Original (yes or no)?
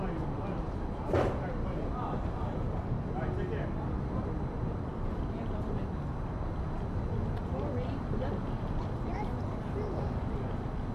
yes